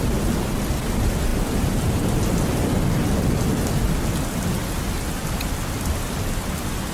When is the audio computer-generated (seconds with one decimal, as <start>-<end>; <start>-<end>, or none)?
none